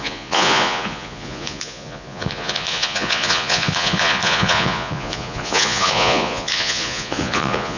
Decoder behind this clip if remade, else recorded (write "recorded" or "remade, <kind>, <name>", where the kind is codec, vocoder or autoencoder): remade, vocoder, Vocos